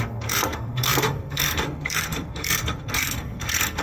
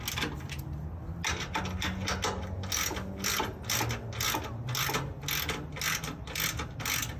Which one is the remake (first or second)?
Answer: first